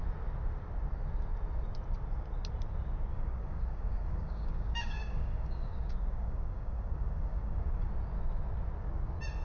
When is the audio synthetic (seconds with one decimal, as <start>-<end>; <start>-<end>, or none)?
3.1-7.9